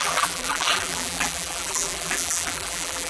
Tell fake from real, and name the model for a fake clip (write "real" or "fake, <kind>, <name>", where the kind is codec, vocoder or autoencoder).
fake, vocoder, BigVGAN v2